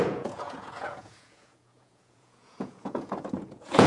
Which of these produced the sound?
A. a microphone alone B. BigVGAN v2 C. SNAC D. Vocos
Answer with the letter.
D